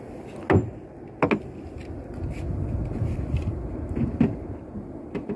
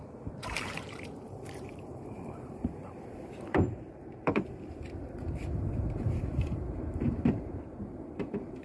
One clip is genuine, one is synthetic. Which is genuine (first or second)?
first